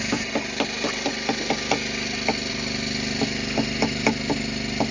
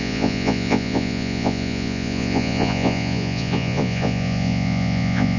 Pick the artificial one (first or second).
second